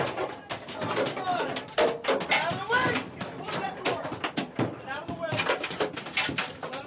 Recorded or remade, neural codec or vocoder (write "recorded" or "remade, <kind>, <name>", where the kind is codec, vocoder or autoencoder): remade, vocoder, BigVGAN v2